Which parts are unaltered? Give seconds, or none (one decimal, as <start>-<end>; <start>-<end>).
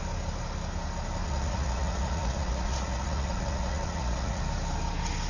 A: 0.0-1.2; 4.4-5.3